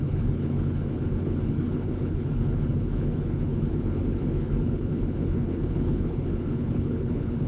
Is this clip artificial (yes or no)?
yes